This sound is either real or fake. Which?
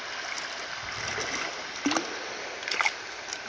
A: real